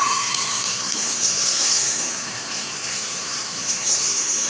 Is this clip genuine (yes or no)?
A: no